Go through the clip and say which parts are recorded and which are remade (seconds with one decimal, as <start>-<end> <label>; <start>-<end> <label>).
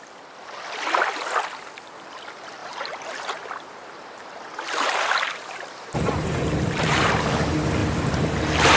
0.0-2.6 recorded; 2.6-7.1 remade; 7.1-7.8 recorded; 7.8-8.8 remade